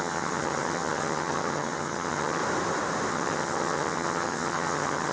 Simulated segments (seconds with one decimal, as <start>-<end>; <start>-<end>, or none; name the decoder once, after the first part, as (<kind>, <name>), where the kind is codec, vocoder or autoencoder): 0.0-2.4 (vocoder, HiFi-GAN); 3.1-5.1